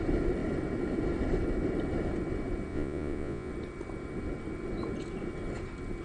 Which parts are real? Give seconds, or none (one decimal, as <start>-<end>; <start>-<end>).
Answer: 0.0-2.7; 3.5-6.0